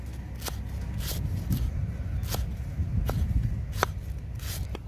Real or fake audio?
real